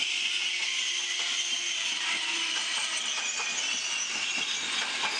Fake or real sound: real